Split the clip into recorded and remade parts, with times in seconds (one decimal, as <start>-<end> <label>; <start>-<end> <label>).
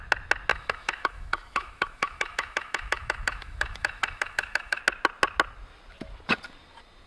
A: 0.0-0.5 recorded; 0.5-4.8 remade; 4.8-7.1 recorded